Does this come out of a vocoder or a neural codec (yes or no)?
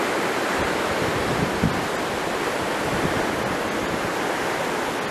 no